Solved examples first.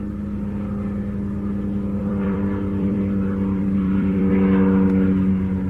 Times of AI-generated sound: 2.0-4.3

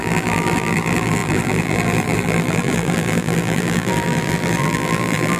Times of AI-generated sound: 0.0-5.4

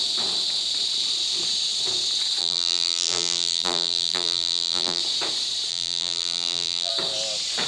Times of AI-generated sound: 2.4-5.0; 5.7-6.9

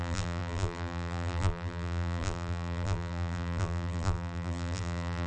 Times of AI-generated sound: 0.0-5.3

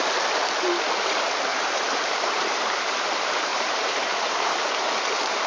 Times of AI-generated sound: 1.5-2.6; 3.5-4.7